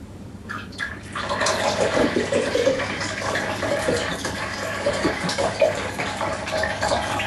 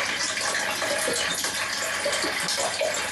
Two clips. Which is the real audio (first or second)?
second